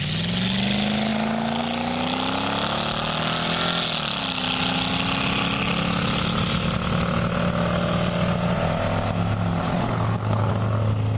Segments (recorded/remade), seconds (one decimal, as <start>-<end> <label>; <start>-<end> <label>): 0.0-9.6 recorded; 9.6-10.5 remade; 10.5-11.2 recorded